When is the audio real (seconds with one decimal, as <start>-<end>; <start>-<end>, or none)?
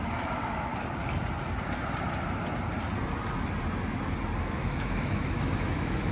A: 0.7-4.4